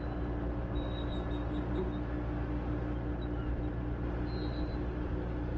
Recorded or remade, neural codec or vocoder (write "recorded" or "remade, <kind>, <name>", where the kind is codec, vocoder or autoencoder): recorded